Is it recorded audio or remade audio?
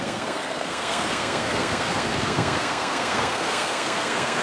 remade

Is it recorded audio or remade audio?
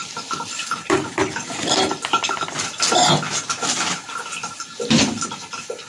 recorded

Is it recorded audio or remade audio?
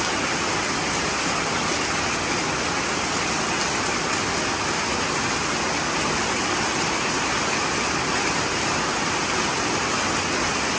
recorded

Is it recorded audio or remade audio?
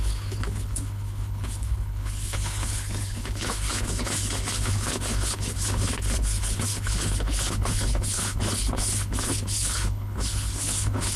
remade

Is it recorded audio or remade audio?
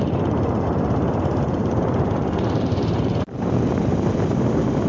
recorded